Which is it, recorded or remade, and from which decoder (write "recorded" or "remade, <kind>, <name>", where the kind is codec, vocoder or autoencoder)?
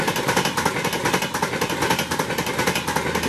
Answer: recorded